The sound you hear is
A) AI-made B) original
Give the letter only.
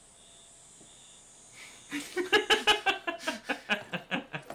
B